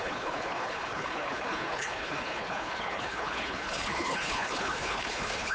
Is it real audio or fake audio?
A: fake